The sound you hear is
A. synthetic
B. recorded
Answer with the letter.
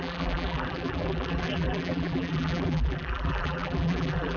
A